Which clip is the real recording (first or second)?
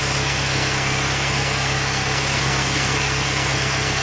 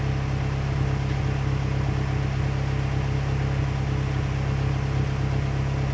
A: second